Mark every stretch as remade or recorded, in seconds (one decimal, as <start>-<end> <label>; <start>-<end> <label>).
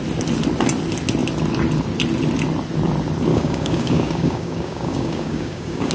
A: 0.0-3.3 recorded; 3.3-5.9 remade